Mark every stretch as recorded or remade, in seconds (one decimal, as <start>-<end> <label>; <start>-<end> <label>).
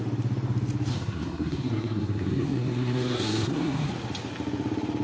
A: 0.0-0.9 recorded; 0.9-3.9 remade; 3.9-5.0 recorded